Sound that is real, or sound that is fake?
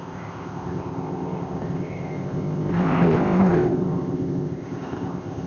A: fake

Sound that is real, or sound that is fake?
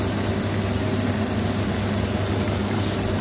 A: real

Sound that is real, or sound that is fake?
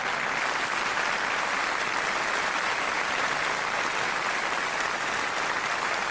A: real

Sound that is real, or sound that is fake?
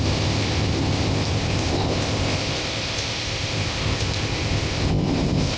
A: fake